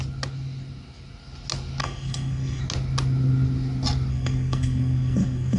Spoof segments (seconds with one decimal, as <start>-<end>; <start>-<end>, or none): 1.8-2.6; 4.1-5.6